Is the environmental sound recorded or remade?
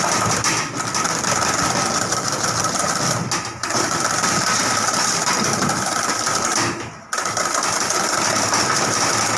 recorded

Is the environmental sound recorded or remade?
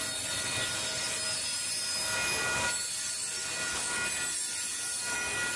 recorded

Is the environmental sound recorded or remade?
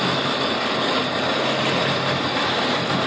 recorded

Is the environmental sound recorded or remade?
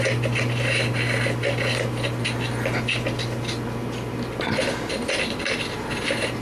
recorded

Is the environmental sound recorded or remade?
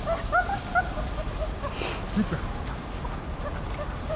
recorded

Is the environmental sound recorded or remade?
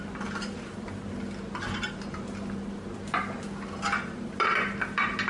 recorded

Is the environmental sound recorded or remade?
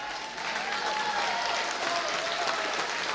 recorded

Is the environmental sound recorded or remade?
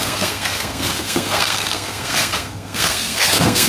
remade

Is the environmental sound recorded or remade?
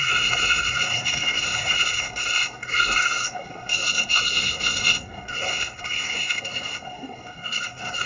remade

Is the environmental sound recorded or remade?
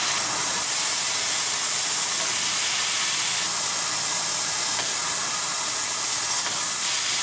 recorded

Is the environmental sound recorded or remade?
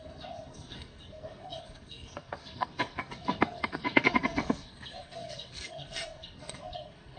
remade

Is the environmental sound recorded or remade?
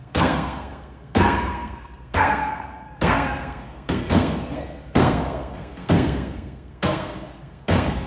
remade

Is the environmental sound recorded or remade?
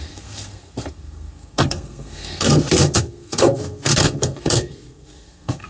remade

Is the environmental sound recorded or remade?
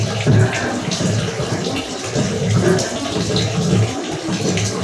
recorded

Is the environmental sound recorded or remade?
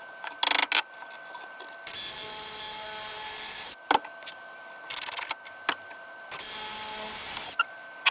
recorded